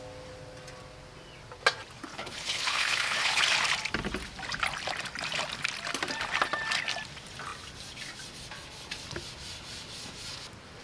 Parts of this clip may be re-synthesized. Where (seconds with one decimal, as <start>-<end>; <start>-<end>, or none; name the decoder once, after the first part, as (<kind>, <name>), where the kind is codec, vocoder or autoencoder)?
2.1-3.4 (codec, HILCodec)